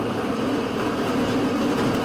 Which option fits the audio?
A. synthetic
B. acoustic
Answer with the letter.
B